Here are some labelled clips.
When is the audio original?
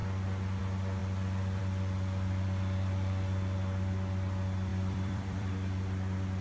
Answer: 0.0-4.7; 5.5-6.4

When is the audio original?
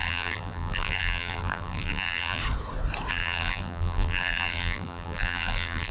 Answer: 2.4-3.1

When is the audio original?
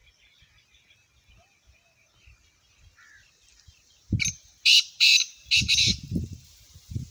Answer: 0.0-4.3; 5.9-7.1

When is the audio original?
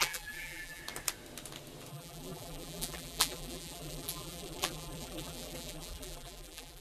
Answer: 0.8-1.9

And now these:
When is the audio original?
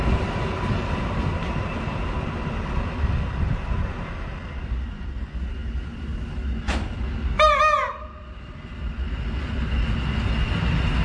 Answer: 0.0-11.0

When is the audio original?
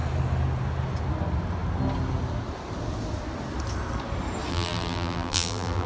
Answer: 0.0-4.5